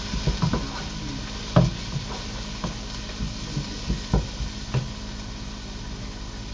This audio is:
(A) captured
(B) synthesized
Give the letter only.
A